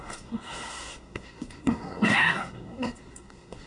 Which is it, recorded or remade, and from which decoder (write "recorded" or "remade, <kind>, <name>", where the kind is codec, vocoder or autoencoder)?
remade, codec, SNAC